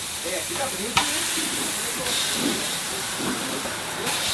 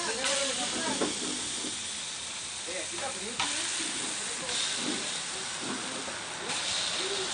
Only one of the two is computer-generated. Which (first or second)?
first